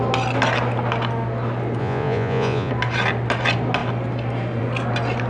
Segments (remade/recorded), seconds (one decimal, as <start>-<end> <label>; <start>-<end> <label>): 0.0-1.8 recorded; 1.8-2.7 remade; 2.7-5.3 recorded